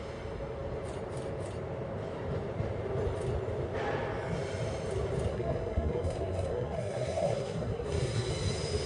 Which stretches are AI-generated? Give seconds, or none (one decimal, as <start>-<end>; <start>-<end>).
5.3-8.3